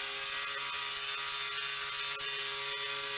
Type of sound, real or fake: real